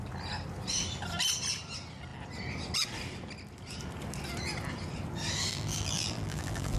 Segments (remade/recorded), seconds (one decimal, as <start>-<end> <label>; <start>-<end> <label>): 0.0-5.5 recorded; 5.5-6.8 remade